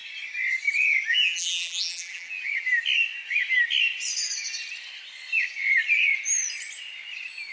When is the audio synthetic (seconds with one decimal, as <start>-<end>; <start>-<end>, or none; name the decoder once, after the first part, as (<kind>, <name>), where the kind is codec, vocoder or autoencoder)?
1.1-2.3 (vocoder, BigVGAN v2)

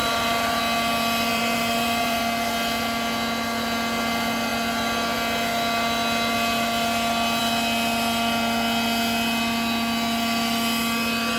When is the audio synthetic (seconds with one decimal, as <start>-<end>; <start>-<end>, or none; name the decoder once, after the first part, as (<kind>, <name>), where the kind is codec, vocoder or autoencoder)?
0.0-0.6 (vocoder, BigVGAN v2); 1.3-2.2

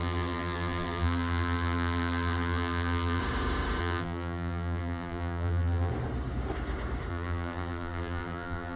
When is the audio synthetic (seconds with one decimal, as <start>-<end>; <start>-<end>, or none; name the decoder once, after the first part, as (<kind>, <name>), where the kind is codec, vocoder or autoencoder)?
0.0-3.2 (vocoder, BigVGAN v2); 3.8-5.9; 7.1-8.8

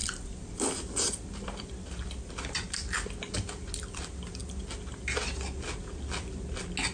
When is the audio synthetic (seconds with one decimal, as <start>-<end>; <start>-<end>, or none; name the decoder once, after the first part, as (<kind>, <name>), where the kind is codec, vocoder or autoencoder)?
0.0-3.2 (vocoder, BigVGAN v2)

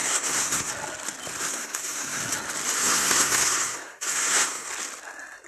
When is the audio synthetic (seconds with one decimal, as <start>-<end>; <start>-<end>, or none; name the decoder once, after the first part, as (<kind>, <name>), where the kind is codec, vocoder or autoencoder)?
0.0-0.7 (codec, SNAC); 1.5-2.2; 2.8-4.7

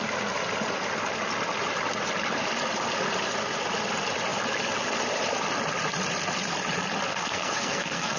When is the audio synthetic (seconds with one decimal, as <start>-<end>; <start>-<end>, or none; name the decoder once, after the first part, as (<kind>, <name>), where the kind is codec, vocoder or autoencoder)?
7.1-8.2 (codec, SNAC)

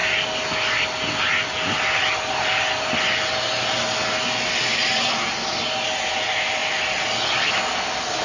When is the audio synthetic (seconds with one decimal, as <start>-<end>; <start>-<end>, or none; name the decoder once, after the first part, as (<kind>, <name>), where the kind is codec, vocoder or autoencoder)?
none

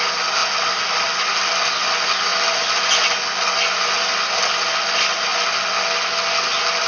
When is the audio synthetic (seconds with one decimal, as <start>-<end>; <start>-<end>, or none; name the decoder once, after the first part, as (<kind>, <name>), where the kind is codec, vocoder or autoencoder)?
none